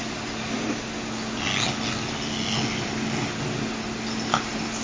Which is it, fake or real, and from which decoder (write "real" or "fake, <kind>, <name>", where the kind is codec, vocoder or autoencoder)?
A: real